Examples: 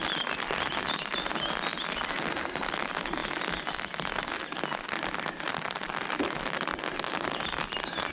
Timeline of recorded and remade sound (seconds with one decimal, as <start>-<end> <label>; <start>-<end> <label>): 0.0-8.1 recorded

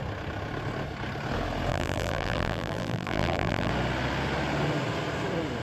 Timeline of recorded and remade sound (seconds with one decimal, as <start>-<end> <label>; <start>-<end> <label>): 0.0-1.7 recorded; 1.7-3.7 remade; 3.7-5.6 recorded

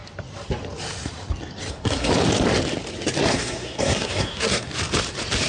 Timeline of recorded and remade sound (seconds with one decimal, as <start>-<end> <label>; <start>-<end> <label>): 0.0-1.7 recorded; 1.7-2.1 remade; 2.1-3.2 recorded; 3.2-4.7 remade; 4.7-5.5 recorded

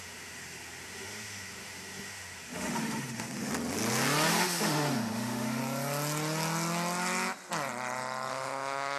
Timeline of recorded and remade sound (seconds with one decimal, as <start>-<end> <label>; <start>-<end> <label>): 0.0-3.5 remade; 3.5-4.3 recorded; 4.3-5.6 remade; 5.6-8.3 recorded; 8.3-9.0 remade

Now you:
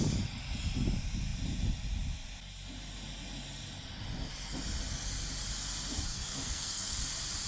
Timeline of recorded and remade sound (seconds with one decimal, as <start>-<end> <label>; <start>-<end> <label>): 0.0-6.1 recorded; 6.1-7.0 remade; 7.0-7.5 recorded

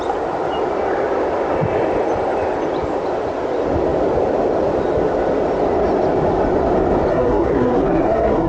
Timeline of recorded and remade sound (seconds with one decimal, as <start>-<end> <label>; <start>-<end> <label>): 0.0-7.1 recorded; 7.1-8.5 remade

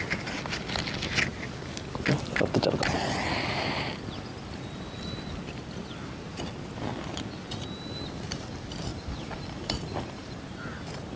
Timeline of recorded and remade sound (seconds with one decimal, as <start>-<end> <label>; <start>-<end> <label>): 0.0-8.9 recorded; 8.9-10.4 remade; 10.4-11.2 recorded